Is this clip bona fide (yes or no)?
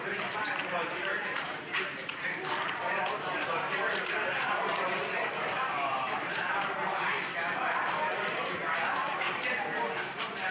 no